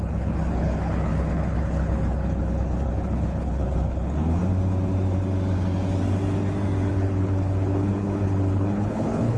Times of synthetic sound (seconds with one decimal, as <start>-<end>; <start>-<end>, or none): 0.0-4.4; 6.9-9.4